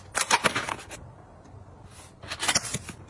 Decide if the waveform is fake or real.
real